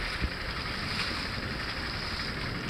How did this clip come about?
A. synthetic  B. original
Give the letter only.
B